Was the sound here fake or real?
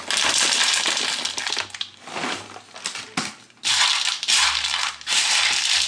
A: real